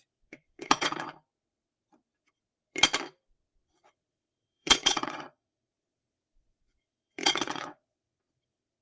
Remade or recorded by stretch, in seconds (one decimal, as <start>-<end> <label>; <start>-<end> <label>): 0.0-1.1 remade; 1.1-3.6 recorded; 3.6-8.8 remade